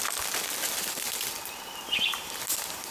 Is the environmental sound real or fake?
real